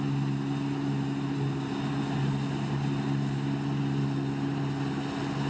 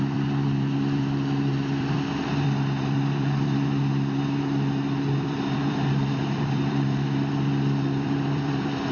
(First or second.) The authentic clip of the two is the first